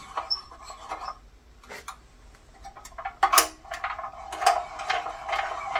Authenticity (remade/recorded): recorded